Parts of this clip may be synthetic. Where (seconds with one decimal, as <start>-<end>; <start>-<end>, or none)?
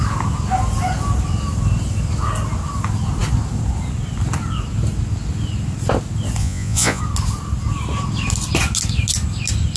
6.4-7.0